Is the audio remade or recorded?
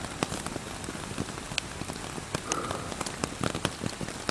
recorded